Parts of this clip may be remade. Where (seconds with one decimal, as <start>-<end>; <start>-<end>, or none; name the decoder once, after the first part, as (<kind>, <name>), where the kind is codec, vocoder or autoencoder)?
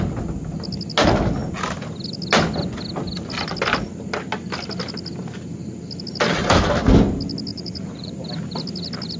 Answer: 7.5-8.1 (vocoder, Vocos)